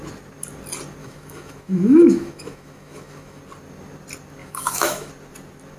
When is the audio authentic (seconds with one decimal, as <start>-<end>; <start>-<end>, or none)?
0.0-1.0; 3.4-4.4; 5.1-5.8